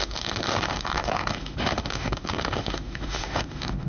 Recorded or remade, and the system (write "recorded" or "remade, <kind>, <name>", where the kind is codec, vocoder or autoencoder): remade, autoencoder, DAC-VAE